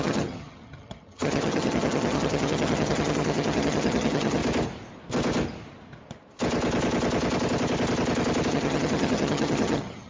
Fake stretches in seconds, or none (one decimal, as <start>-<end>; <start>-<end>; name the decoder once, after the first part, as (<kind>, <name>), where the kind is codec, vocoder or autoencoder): 0.0-4.4 (vocoder, HiFi-GAN); 8.5-10.1